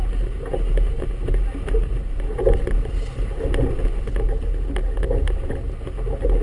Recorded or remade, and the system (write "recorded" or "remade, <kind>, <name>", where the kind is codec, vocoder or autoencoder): recorded